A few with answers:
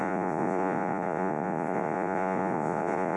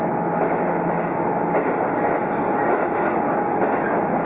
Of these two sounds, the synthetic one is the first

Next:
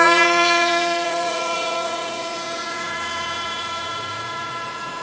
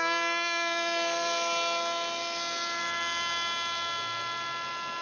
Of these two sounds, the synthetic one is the first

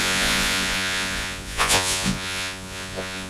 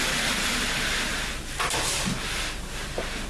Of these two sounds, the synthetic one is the first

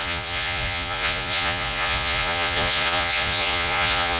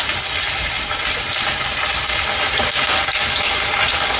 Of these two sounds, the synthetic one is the first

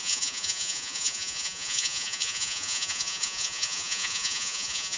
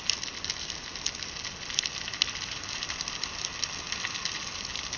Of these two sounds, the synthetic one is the first